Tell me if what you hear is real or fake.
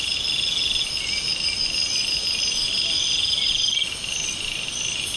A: real